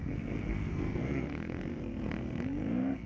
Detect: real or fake fake